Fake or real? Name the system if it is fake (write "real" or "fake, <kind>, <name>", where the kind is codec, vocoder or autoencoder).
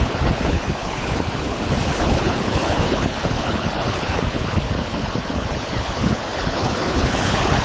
fake, codec, HILCodec